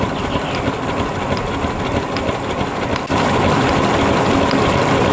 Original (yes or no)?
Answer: yes